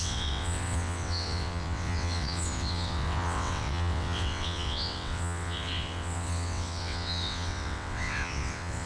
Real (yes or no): no